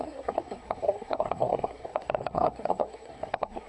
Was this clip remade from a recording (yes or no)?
yes